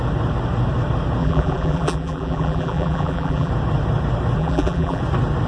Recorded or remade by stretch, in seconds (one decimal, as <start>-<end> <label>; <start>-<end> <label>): 0.0-1.2 recorded; 1.2-3.5 remade; 3.5-4.4 recorded; 4.4-5.0 remade; 5.0-5.5 recorded